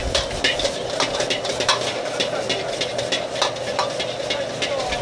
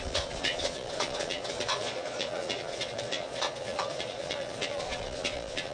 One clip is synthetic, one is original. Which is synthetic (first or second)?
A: second